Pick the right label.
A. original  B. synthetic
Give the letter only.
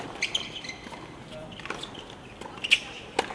A